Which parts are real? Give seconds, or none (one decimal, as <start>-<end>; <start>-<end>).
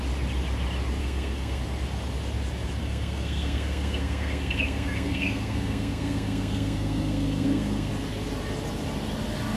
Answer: 0.0-1.0; 1.6-2.8; 7.9-9.6